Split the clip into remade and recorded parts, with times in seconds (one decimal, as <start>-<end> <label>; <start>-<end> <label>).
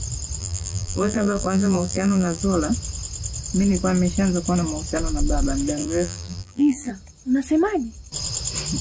0.0-0.4 recorded; 0.4-2.4 remade; 2.4-5.8 recorded; 5.8-6.9 remade; 6.9-8.8 recorded